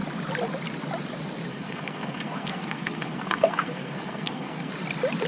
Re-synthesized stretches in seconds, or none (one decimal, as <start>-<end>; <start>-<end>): 1.5-4.7